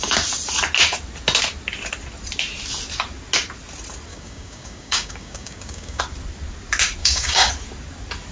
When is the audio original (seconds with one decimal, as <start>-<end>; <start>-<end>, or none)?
0.0-4.1; 6.0-7.0; 7.5-8.3